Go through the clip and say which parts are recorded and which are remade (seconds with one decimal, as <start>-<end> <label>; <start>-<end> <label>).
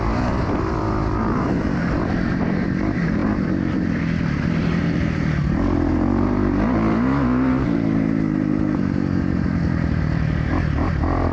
0.0-11.3 remade